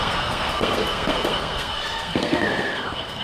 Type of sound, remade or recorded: remade